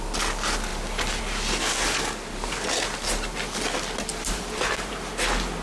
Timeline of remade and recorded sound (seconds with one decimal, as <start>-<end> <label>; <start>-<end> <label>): 0.0-4.1 recorded; 4.1-5.1 remade; 5.1-5.6 recorded